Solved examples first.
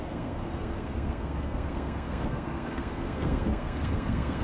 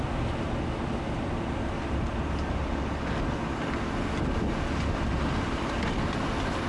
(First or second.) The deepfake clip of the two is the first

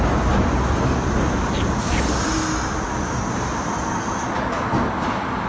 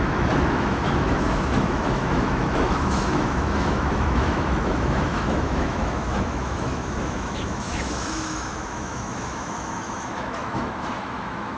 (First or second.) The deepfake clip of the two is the second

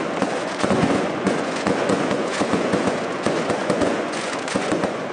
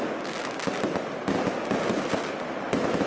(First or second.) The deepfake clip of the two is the first